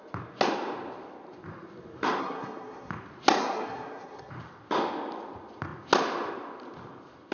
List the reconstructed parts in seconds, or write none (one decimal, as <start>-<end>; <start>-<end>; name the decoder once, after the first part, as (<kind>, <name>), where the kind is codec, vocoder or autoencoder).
2.2-2.9 (codec, SNAC); 3.4-4.3